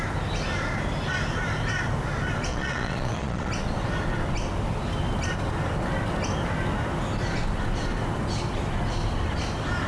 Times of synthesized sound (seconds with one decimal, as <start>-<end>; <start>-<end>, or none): 2.5-3.5